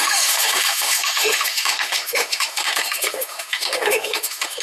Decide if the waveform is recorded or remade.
remade